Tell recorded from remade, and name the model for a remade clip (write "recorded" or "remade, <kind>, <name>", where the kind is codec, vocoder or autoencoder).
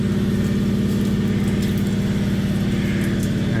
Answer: recorded